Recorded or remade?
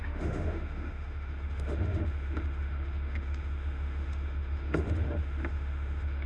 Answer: remade